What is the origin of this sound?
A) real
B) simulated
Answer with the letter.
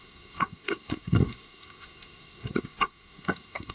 B